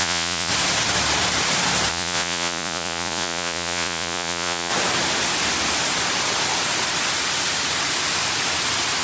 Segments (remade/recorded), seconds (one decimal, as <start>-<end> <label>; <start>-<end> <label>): 0.0-0.5 remade; 0.5-1.9 recorded; 1.9-4.7 remade; 4.7-9.0 recorded